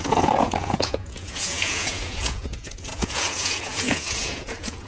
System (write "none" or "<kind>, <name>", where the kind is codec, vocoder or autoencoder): vocoder, Vocos